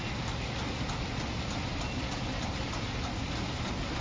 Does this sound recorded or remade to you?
recorded